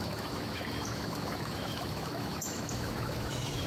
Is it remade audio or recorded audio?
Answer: remade